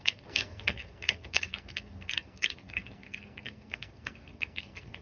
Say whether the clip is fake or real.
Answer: fake